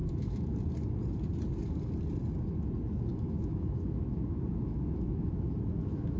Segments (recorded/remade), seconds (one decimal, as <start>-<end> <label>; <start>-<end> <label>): 0.0-0.6 remade; 0.6-3.1 recorded; 3.1-6.2 remade